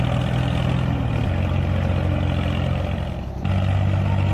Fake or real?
real